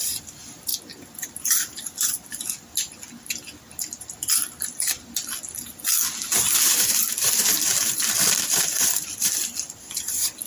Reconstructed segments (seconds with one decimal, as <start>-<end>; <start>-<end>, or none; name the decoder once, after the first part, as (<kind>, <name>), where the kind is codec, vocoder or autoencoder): 0.0-0.7 (vocoder, BigVGAN v2); 1.3-2.9; 7.8-10.5